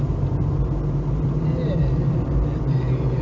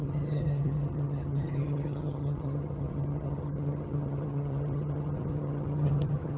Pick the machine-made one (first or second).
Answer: second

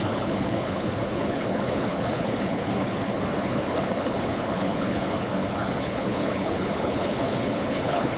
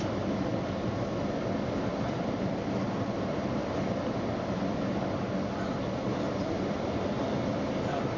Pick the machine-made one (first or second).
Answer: first